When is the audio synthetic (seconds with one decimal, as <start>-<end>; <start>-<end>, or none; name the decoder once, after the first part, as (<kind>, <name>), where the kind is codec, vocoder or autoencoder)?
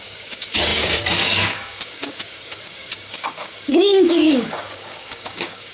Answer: 0.0-5.7 (codec, DAC)